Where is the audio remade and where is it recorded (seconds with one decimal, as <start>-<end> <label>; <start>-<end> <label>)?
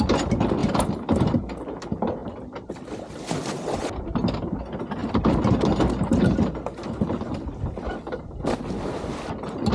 0.0-0.6 recorded; 0.6-1.4 remade; 1.4-9.7 recorded